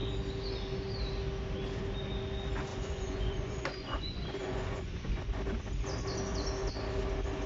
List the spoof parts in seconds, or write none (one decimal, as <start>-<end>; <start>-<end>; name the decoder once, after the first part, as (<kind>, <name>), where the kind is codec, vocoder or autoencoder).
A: 2.7-5.4 (vocoder, Vocos)